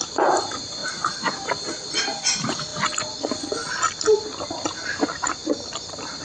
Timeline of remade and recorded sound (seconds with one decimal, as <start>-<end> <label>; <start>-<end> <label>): 0.0-0.8 recorded; 0.8-1.6 remade; 1.6-2.7 recorded; 2.7-4.2 remade; 4.2-5.4 recorded; 5.4-6.2 remade

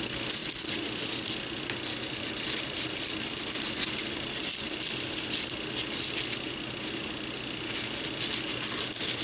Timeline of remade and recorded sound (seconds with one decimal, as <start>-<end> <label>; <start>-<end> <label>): 0.0-0.4 recorded; 0.4-1.3 remade; 1.3-9.2 recorded

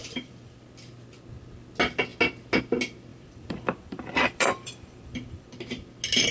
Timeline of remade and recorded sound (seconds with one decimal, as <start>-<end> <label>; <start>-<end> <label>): 0.0-0.6 remade; 0.6-3.1 recorded; 3.1-5.5 remade; 5.5-6.3 recorded